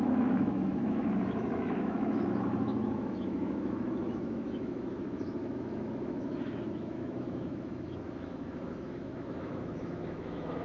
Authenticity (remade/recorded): remade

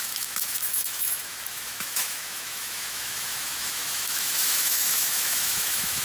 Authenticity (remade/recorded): remade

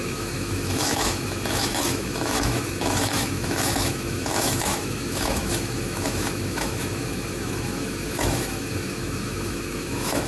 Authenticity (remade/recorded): remade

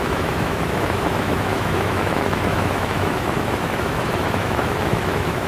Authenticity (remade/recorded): remade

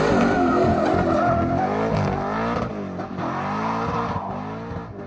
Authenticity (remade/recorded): recorded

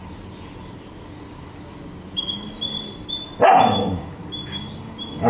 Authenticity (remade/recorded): recorded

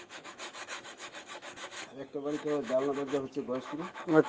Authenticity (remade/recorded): remade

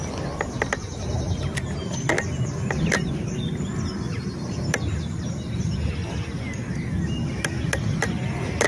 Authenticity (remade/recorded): recorded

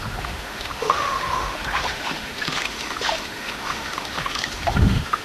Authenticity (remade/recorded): remade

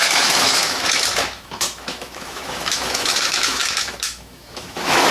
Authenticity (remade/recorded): remade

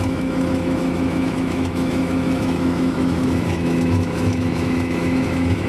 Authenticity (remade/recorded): remade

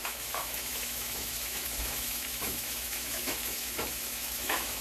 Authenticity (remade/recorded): remade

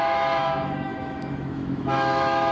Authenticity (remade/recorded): remade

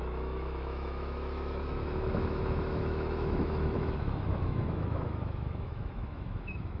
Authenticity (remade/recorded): remade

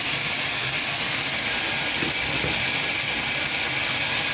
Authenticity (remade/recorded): recorded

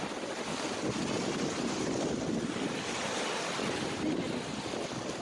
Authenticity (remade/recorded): recorded